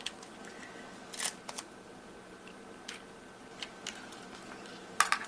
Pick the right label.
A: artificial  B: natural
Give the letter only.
B